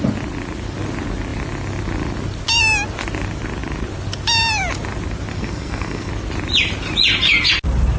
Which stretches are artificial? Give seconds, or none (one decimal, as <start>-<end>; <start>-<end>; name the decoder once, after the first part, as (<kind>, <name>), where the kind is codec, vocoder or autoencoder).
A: 5.3-6.1 (codec, SNAC)